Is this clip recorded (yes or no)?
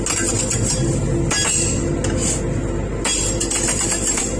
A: yes